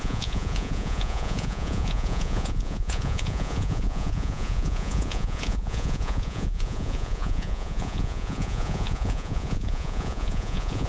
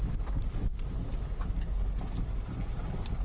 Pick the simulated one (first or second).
first